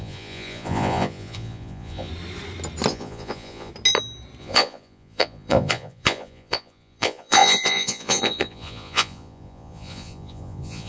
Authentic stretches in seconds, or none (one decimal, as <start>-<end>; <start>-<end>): 2.1-2.9; 3.7-4.4